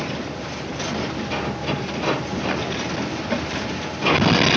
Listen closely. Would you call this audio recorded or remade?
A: recorded